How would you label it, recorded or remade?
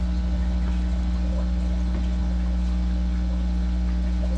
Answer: recorded